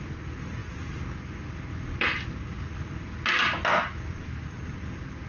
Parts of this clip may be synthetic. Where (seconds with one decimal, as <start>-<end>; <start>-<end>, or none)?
none